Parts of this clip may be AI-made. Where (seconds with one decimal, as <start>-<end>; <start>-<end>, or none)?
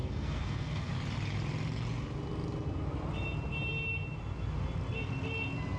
0.0-0.9